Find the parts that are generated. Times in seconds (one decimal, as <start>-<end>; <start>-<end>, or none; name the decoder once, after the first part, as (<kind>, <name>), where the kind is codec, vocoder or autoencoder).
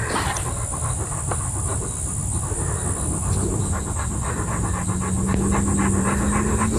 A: none